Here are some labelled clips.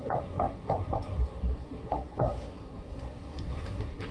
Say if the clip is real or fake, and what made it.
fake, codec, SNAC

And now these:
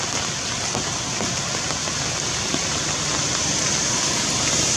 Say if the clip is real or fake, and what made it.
real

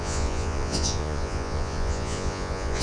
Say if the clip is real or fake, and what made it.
fake, vocoder, Vocos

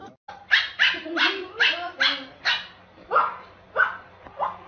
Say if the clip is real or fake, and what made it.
real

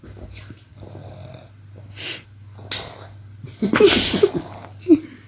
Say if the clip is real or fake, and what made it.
real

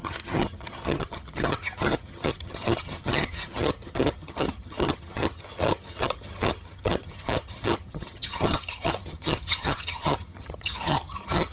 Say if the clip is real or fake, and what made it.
fake, vocoder, HiFi-GAN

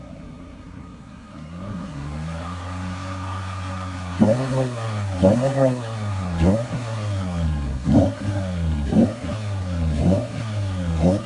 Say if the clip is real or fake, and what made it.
fake, codec, SNAC